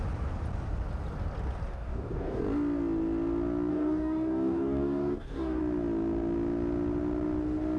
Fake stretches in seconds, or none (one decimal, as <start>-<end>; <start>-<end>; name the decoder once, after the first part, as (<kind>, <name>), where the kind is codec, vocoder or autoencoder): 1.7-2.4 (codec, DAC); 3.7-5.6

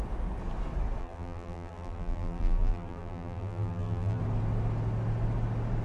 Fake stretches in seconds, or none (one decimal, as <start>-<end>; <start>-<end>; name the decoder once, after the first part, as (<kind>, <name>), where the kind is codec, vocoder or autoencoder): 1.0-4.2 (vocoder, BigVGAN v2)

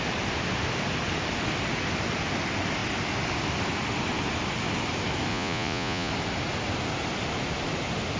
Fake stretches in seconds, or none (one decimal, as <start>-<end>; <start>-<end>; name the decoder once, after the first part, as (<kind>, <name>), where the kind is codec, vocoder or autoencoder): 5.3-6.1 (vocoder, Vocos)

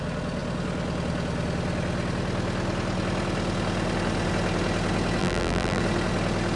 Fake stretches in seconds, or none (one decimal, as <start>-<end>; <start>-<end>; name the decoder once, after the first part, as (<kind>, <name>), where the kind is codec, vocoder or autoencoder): 5.2-5.8 (vocoder, BigVGAN v2)